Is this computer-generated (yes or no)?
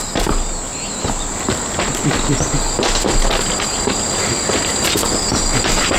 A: no